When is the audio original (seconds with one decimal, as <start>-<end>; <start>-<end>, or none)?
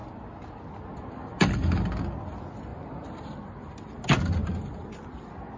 1.1-2.7; 3.4-5.6